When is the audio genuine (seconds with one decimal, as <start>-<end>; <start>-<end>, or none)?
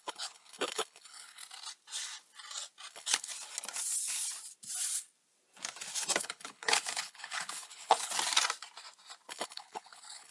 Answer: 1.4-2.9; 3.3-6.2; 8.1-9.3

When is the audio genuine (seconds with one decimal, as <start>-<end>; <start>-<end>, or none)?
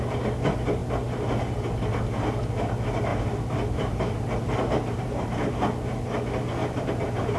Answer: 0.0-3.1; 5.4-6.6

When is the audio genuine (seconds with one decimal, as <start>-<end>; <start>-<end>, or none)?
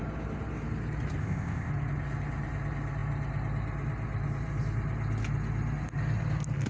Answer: 0.0-1.2; 1.7-6.7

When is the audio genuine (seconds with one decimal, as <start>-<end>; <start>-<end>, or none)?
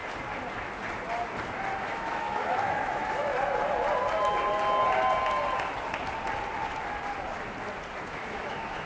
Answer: 0.0-1.8; 3.3-8.1